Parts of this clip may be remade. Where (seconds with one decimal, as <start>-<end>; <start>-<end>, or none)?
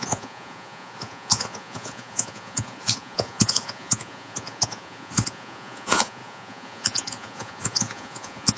0.0-8.6